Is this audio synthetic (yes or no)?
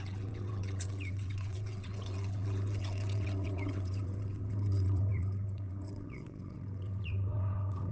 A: yes